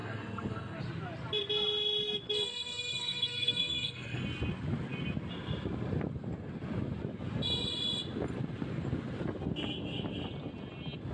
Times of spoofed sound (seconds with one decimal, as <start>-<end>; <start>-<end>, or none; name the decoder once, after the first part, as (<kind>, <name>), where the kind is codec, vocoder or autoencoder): 0.0-0.8 (codec, SNAC); 2.5-4.2